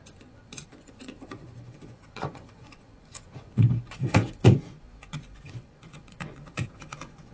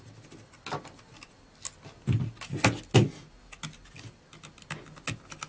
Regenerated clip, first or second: first